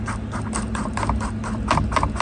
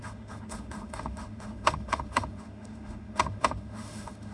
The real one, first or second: first